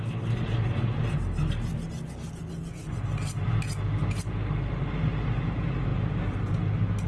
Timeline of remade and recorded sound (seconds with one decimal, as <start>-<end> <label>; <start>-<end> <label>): 0.0-7.1 recorded